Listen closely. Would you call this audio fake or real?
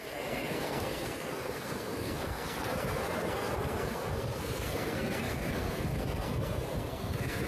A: fake